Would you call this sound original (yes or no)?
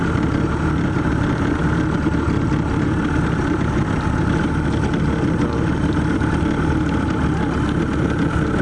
yes